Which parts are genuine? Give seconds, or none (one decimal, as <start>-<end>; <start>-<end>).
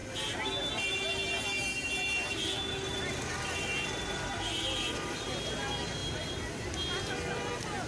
0.0-7.9